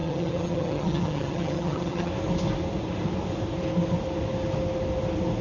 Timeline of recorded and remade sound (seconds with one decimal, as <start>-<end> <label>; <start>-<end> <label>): 0.0-2.1 remade; 2.1-5.4 recorded